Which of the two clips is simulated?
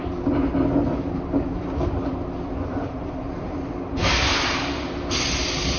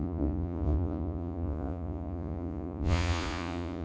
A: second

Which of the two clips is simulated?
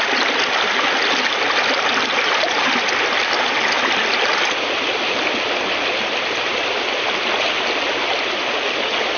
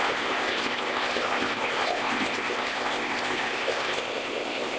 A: second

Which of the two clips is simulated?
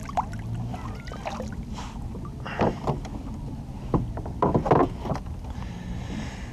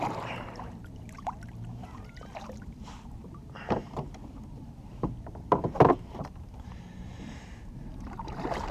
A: second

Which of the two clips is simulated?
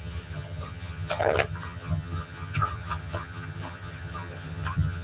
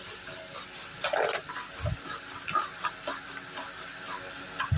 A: first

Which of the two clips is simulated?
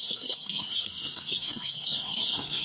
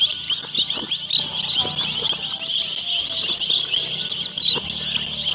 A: first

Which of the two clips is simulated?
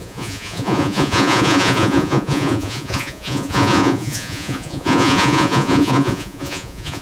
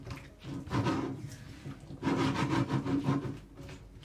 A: first